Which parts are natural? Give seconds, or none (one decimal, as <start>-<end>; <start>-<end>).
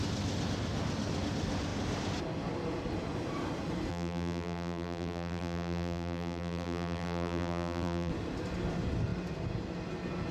0.0-3.9; 8.1-10.3